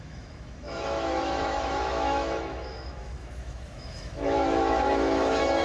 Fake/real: fake